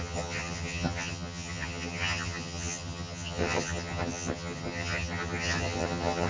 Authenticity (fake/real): fake